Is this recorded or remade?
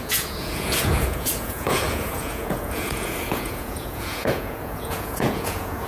remade